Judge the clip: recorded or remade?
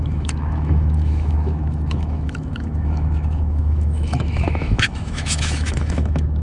remade